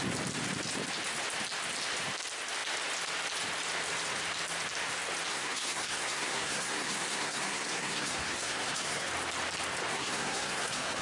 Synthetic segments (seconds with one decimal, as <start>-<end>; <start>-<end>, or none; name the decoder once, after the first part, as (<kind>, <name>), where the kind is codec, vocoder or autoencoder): 5.3-9.1 (codec, SNAC); 9.9-11.0